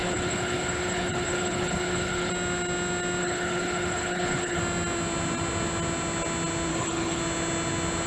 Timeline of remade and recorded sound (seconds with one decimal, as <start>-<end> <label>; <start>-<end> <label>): 0.0-2.3 remade; 2.3-3.2 recorded; 3.2-4.6 remade; 4.6-6.7 recorded; 6.7-7.2 remade; 7.2-8.1 recorded